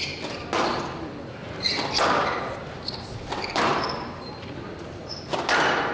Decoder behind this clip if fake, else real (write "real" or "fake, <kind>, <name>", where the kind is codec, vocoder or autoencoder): real